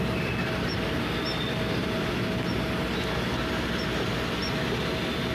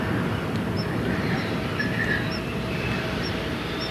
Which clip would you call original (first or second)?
first